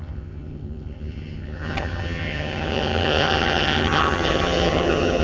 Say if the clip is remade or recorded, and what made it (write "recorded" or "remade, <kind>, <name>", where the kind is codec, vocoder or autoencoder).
remade, vocoder, HiFi-GAN